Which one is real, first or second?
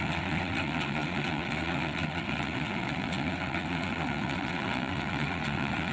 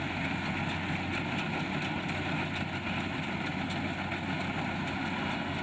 second